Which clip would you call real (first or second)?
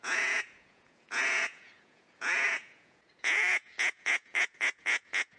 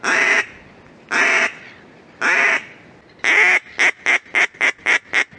second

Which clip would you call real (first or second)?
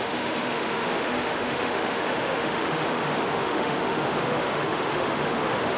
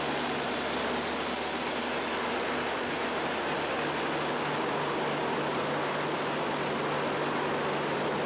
second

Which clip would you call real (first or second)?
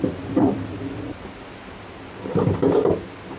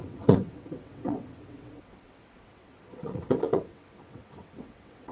first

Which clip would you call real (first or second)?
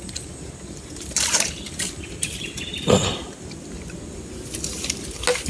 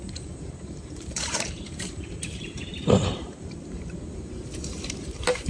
first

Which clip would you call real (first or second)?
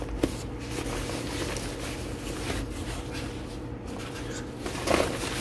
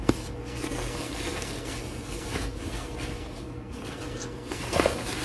first